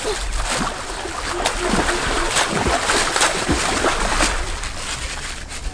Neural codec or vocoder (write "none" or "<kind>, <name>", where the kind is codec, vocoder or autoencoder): none